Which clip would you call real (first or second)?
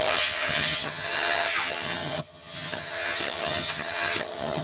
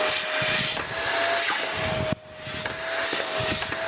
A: second